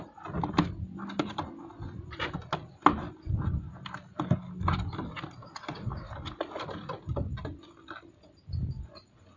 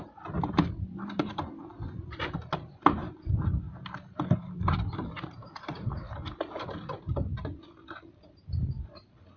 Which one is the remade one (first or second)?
second